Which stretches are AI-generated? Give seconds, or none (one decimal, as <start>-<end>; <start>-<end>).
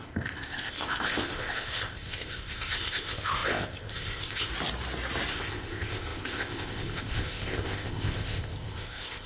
0.0-4.5; 5.3-9.3